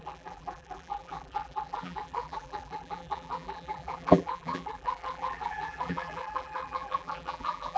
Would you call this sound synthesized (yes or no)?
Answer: yes